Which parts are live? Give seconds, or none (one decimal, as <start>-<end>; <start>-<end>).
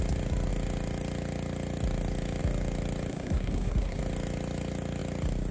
0.0-3.1; 4.0-5.5